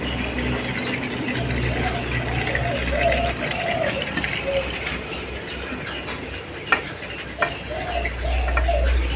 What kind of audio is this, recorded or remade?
recorded